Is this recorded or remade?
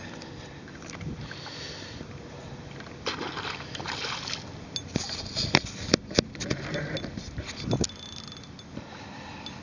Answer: recorded